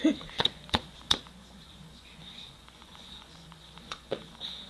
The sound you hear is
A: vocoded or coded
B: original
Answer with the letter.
A